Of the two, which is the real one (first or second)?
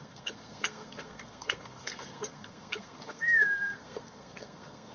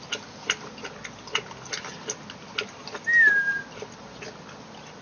second